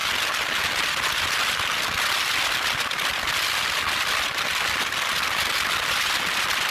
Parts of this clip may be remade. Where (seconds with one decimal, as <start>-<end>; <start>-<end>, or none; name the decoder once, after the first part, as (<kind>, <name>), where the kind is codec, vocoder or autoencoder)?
none